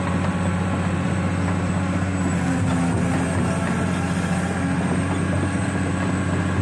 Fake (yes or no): no